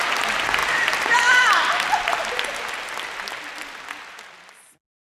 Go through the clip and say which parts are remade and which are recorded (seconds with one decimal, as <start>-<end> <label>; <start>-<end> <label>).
0.0-5.1 recorded